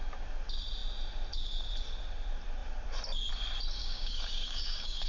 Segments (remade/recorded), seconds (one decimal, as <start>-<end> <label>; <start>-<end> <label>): 0.0-3.8 recorded; 3.8-5.1 remade

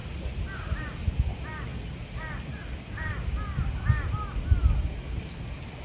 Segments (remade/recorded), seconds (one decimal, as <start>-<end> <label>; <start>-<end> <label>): 0.0-5.8 recorded

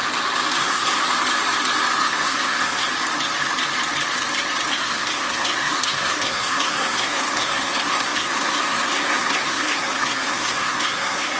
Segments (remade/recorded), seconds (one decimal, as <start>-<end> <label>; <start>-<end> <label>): 0.0-0.6 recorded; 0.6-1.0 remade; 1.0-2.0 recorded; 2.0-2.9 remade; 2.9-4.7 recorded; 4.7-11.4 remade

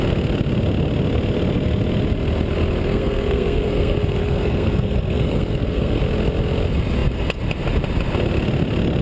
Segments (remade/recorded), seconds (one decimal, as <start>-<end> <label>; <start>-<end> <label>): 0.0-2.8 recorded; 2.8-6.0 remade; 6.0-9.0 recorded

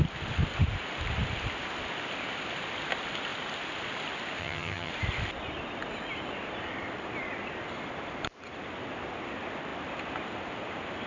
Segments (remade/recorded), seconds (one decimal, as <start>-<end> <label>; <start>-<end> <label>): 0.0-4.4 recorded; 4.4-4.9 remade; 4.9-11.1 recorded

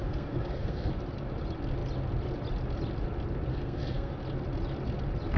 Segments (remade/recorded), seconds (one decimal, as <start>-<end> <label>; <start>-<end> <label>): 0.0-0.9 remade; 0.9-3.5 recorded; 3.5-4.1 remade; 4.1-5.4 recorded